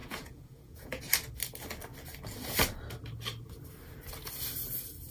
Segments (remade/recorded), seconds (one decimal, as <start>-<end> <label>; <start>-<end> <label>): 0.0-1.0 remade; 1.0-5.1 recorded